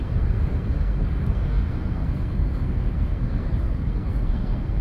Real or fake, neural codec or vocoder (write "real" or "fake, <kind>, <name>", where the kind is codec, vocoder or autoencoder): fake, codec, SNAC